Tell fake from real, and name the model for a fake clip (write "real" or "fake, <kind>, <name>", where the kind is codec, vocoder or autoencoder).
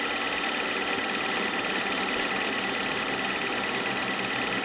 real